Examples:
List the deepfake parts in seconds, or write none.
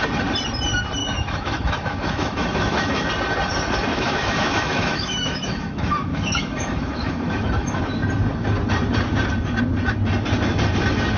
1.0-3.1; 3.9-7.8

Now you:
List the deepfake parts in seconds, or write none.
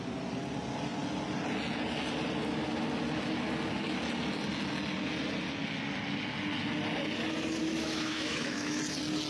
7.6-8.8